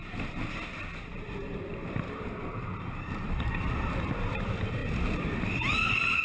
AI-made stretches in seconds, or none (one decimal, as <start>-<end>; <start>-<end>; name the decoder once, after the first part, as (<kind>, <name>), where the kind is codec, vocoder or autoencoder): 0.0-4.8 (vocoder, BigVGAN v2); 5.4-6.2